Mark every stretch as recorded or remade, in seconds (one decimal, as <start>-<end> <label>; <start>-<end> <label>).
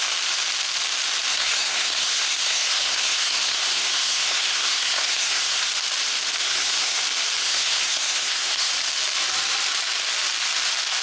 0.0-1.3 recorded; 1.3-5.7 remade; 5.7-6.4 recorded; 6.4-7.0 remade; 7.0-7.4 recorded; 7.4-8.7 remade; 8.7-11.0 recorded